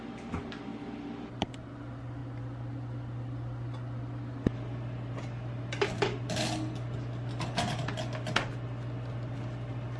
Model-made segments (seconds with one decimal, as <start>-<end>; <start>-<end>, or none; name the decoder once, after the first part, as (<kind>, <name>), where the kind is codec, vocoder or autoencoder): 0.7-1.5 (vocoder, BigVGAN v2)